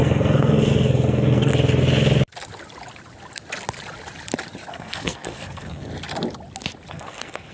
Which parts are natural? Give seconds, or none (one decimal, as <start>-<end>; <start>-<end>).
1.5-4.7; 5.9-6.9